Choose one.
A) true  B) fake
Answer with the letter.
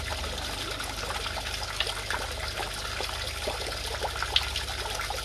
A